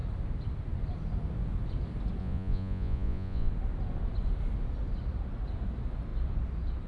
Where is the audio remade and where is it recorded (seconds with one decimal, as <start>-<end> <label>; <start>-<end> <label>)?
0.0-2.2 recorded; 2.2-3.5 remade; 3.5-6.9 recorded